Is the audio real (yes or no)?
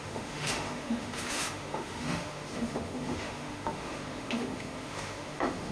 no